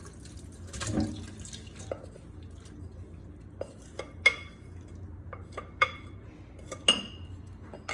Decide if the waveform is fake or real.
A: real